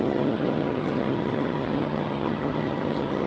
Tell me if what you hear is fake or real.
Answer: fake